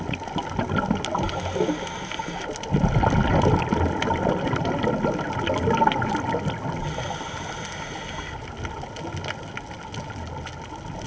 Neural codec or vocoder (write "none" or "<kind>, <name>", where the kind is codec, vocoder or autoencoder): none